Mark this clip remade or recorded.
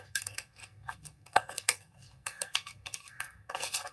remade